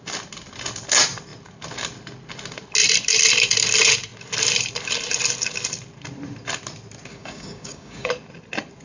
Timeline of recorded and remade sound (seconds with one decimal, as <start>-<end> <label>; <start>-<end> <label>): 0.0-7.1 recorded; 7.1-8.1 remade; 8.1-8.8 recorded